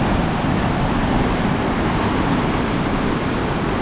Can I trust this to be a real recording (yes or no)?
yes